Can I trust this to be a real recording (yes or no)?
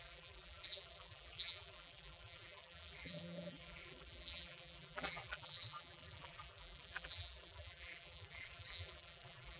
no